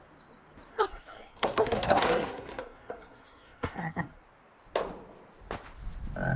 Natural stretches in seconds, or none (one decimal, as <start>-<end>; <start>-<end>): 0.0-0.7; 4.2-6.4